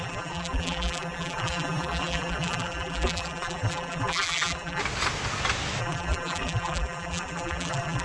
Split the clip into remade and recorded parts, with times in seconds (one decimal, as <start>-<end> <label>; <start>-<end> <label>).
0.0-4.8 remade; 4.8-5.8 recorded; 5.8-8.0 remade

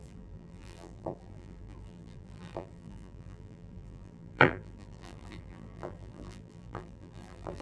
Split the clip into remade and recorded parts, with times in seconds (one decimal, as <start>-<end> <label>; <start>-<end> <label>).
0.0-7.6 remade

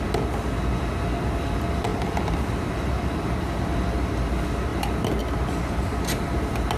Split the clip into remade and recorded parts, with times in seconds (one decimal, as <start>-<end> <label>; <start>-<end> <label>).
0.0-6.8 recorded

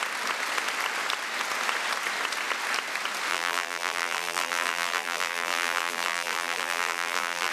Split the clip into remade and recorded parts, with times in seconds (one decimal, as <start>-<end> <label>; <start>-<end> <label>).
0.0-3.3 recorded; 3.3-7.5 remade

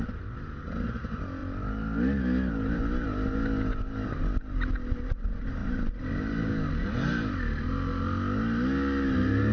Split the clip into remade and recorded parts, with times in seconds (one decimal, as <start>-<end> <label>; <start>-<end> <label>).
0.0-5.6 recorded; 5.6-6.3 remade; 6.3-9.5 recorded

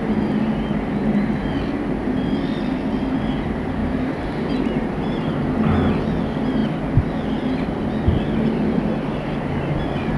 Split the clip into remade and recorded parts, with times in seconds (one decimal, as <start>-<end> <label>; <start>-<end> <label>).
0.0-3.8 recorded; 3.8-4.5 remade; 4.5-10.2 recorded

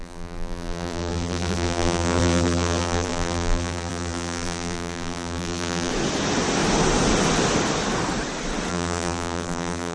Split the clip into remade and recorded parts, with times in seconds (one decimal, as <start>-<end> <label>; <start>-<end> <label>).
0.0-5.9 remade; 5.9-8.7 recorded; 8.7-9.9 remade

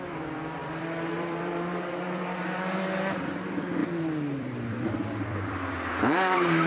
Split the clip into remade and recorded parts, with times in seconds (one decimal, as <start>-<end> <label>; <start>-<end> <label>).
0.0-6.7 remade